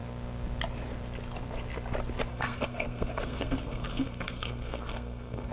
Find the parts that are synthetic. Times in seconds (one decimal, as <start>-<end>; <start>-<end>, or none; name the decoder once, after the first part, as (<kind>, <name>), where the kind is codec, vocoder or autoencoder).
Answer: 2.3-5.5 (codec, SNAC)